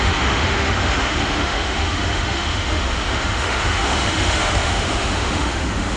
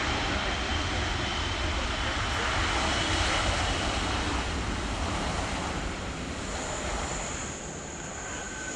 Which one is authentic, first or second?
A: second